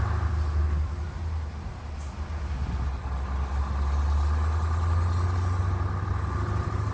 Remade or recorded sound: recorded